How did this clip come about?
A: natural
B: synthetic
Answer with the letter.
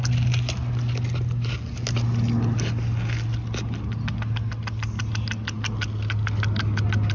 A